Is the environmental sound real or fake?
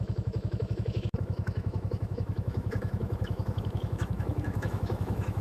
fake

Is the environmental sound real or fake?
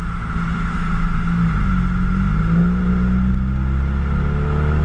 real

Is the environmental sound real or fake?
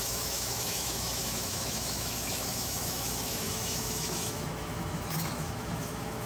fake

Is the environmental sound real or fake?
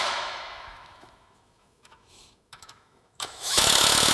fake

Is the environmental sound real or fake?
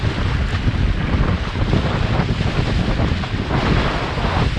real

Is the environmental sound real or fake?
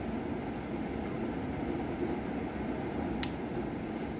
real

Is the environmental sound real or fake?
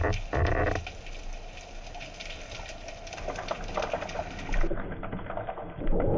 real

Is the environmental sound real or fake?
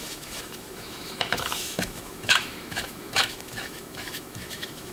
fake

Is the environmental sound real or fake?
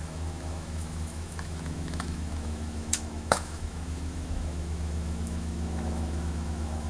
fake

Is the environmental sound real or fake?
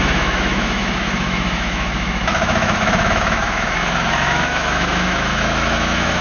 fake